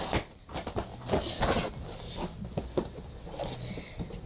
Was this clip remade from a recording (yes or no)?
no